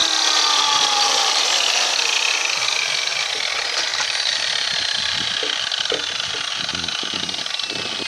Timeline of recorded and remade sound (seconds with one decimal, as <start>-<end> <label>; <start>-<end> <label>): 0.0-1.4 remade; 1.4-3.9 recorded; 3.9-6.7 remade; 6.7-8.1 recorded